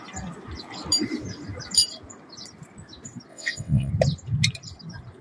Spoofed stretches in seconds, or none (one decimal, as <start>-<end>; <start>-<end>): 3.3-3.9